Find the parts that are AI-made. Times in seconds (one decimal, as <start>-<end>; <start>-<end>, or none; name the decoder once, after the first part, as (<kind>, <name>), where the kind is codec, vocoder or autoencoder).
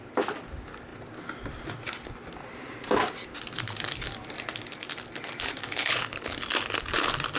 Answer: 5.6-6.2 (codec, HILCodec)